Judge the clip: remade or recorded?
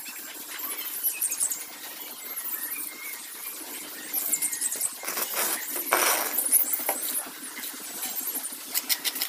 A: recorded